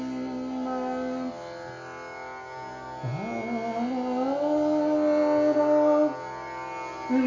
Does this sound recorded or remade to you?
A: recorded